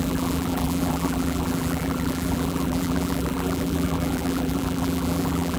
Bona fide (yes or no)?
no